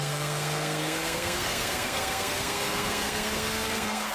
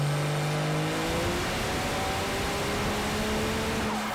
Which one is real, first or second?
second